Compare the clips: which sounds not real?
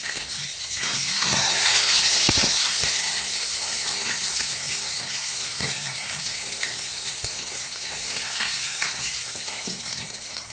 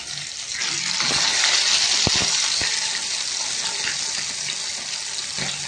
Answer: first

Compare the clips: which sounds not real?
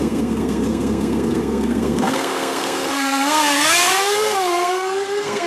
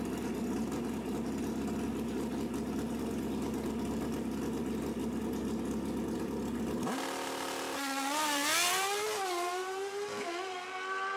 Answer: first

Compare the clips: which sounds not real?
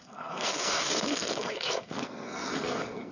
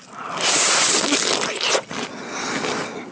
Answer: first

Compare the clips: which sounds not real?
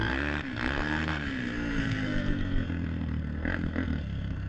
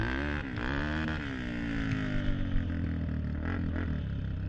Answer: first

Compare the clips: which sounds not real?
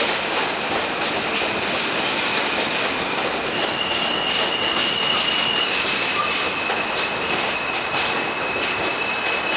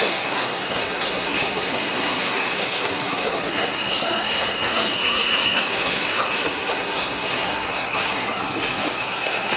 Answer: second